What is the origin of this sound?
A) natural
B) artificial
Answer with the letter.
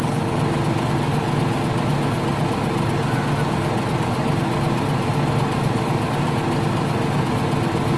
A